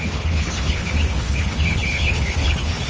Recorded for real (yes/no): no